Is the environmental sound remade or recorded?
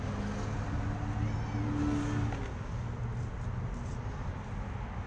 recorded